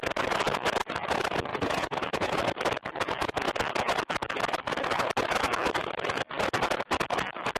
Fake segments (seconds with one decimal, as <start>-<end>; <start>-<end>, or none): 1.5-2.4